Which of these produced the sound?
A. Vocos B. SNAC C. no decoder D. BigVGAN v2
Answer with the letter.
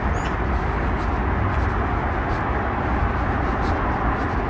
C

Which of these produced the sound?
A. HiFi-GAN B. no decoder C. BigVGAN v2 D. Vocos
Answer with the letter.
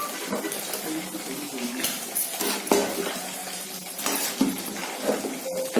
B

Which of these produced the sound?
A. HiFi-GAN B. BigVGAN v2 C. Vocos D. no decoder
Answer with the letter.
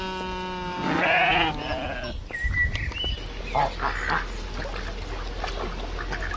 D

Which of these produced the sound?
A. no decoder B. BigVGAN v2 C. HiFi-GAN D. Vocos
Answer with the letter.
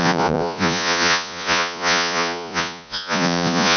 D